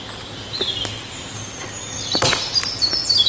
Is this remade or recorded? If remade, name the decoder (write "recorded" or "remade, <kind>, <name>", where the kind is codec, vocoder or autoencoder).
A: recorded